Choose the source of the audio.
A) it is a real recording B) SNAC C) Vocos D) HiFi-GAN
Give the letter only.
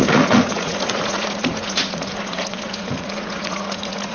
C